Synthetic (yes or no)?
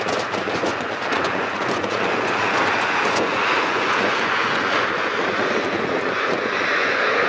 yes